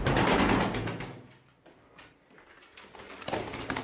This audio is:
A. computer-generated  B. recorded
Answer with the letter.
B